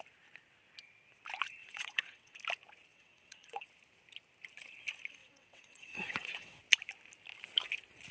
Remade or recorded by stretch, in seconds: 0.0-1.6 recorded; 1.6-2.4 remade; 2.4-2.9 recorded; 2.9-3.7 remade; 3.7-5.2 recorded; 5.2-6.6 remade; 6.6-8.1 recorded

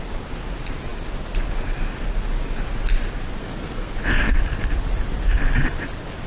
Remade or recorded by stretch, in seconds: 0.0-3.4 recorded; 3.4-3.9 remade; 3.9-6.3 recorded

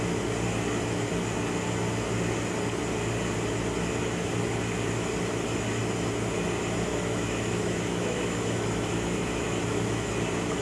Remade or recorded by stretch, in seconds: 0.0-6.9 recorded; 6.9-10.1 remade; 10.1-10.6 recorded

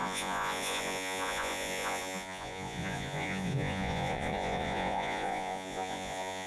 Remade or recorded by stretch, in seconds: 0.0-6.5 remade

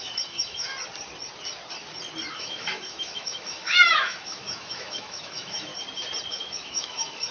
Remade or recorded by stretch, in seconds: 0.0-0.7 remade; 0.7-2.3 recorded; 2.3-5.7 remade; 5.7-6.3 recorded; 6.3-7.3 remade

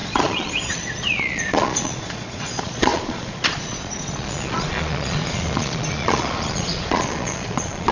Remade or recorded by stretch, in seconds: 0.0-7.9 remade